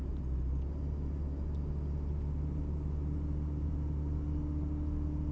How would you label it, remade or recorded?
recorded